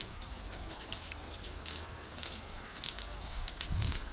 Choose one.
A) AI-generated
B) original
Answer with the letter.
A